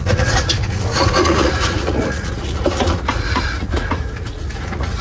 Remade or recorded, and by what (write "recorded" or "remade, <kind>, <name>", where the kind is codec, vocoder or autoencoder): remade, vocoder, Vocos